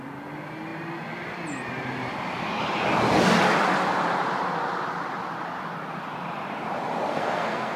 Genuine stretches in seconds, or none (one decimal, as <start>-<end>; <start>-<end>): 0.0-7.1